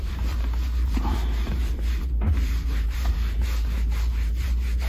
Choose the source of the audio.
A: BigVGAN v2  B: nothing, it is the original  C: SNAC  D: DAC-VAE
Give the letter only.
A